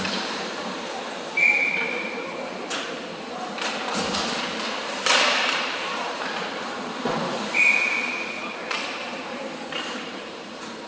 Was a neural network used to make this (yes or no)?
yes